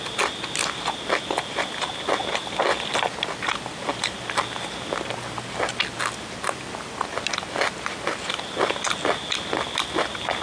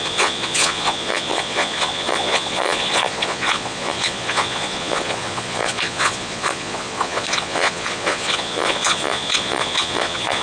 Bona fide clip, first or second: first